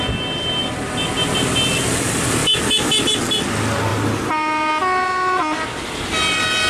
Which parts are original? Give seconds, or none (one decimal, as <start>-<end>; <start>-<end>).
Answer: 0.0-2.4; 2.9-3.9; 4.7-6.7